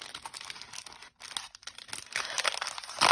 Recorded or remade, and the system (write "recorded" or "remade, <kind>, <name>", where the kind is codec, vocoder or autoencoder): recorded